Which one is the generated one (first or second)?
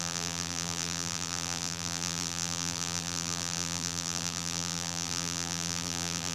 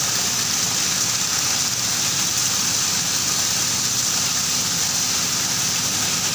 first